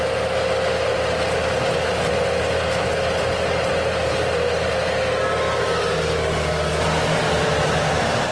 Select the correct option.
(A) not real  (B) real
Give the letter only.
B